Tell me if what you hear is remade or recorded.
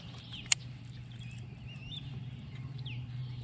remade